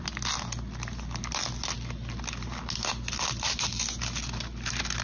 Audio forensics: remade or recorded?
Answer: recorded